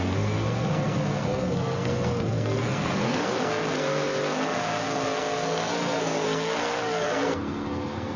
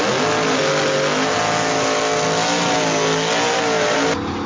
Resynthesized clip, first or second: first